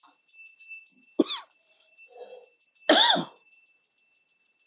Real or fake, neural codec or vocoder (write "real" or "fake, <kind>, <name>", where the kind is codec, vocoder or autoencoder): real